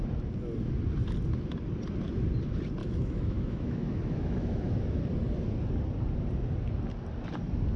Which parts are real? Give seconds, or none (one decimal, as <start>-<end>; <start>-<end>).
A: 0.0-2.8; 5.0-7.8